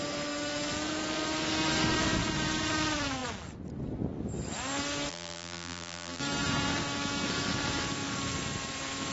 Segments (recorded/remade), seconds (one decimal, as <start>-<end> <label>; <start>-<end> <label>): 0.0-5.1 recorded; 5.1-6.2 remade; 6.2-9.1 recorded